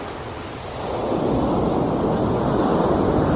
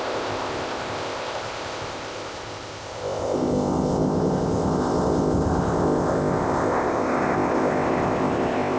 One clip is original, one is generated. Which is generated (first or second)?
second